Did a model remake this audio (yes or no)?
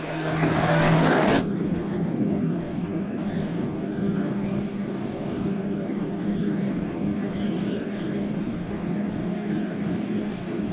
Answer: yes